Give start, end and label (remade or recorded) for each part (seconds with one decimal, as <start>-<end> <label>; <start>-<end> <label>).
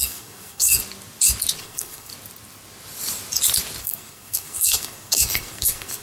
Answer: 0.0-0.8 remade; 0.8-1.6 recorded; 1.6-2.1 remade; 2.1-3.8 recorded; 3.8-6.0 remade